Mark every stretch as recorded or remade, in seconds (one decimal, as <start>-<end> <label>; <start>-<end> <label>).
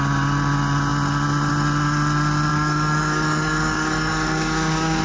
0.0-2.5 recorded; 2.5-5.0 remade